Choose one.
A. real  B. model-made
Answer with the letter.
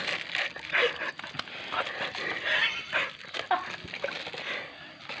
A